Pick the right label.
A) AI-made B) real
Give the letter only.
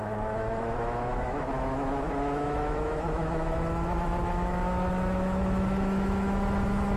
A